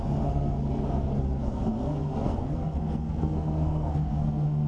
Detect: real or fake fake